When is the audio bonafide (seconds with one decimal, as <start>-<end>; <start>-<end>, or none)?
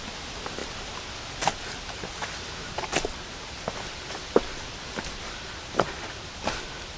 0.0-7.0